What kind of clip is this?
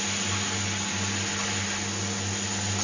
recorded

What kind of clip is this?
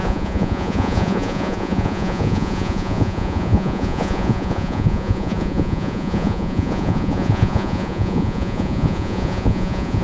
remade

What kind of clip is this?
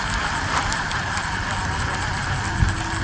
recorded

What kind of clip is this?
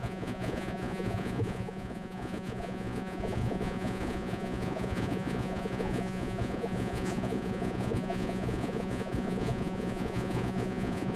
remade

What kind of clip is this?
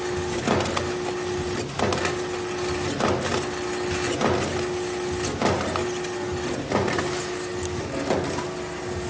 recorded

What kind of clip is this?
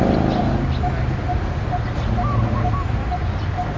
recorded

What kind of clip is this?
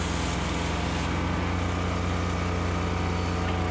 recorded